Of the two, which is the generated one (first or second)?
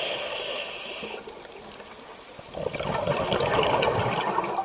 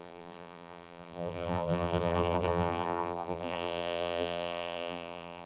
second